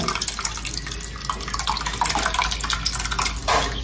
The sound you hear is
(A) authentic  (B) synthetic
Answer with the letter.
A